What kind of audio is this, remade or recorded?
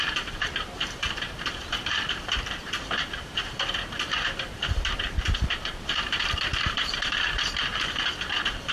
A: remade